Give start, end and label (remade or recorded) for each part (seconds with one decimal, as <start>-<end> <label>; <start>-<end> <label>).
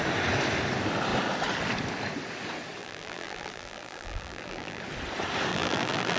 0.0-2.8 recorded; 2.8-4.8 remade; 4.8-5.5 recorded; 5.5-6.2 remade